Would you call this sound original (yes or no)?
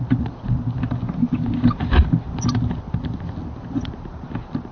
yes